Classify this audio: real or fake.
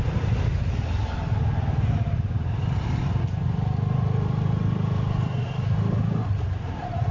real